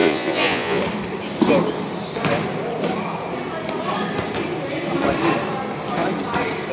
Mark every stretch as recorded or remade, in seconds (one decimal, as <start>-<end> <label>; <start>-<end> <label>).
0.0-0.8 remade; 0.8-6.7 recorded